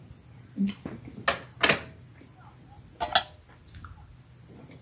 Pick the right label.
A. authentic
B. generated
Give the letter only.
A